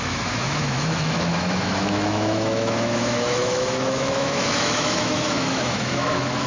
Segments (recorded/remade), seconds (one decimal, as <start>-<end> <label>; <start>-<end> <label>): 0.0-6.5 remade